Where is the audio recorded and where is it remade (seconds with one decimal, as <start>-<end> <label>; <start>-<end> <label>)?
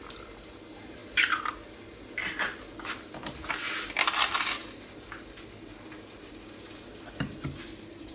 0.0-8.1 recorded